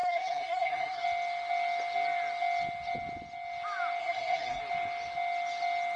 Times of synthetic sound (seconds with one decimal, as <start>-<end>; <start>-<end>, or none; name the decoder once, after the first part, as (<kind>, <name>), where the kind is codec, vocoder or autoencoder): 0.0-1.0 (codec, SNAC); 4.0-4.6